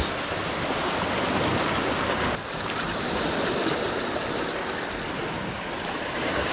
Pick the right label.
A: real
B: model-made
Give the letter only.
A